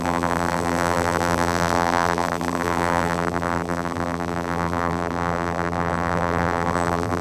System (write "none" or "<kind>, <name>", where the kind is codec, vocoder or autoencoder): vocoder, BigVGAN v2